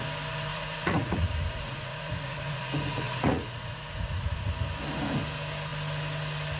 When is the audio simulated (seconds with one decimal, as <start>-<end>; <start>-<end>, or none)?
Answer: 0.5-4.5